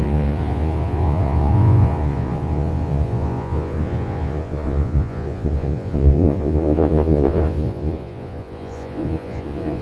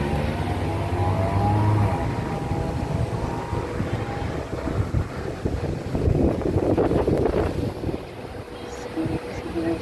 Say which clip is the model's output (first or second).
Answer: first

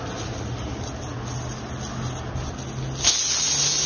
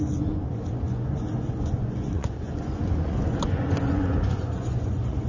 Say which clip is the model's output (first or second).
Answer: second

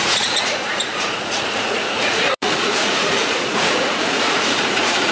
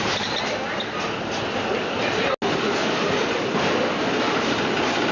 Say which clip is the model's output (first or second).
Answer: first